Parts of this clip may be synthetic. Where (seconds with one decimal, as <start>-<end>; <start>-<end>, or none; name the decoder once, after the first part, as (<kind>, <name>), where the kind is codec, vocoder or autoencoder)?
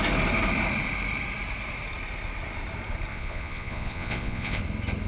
3.1-4.6 (vocoder, Vocos)